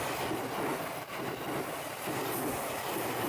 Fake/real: real